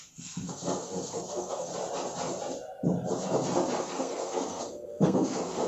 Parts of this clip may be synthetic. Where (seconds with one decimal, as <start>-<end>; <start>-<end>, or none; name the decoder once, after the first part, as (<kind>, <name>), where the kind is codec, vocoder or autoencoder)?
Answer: 0.0-1.7 (codec, SNAC); 3.8-5.7